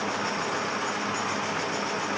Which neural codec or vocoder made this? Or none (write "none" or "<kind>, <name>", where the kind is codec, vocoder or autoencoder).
none